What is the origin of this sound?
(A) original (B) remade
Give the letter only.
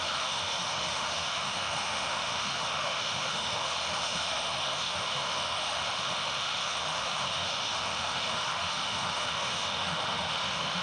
B